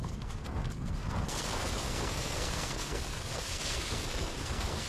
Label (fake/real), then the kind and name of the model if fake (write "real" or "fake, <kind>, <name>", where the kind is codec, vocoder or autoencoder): fake, codec, SNAC